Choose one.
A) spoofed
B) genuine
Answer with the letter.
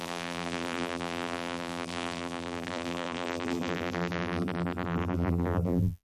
A